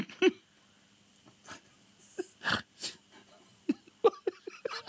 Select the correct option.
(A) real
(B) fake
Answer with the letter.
A